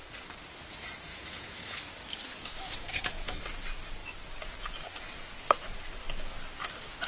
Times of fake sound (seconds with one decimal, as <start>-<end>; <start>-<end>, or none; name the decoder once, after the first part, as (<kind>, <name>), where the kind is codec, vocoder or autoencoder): 1.1-3.4 (autoencoder, DAC-VAE)